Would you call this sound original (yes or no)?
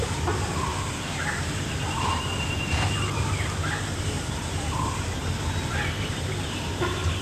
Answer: yes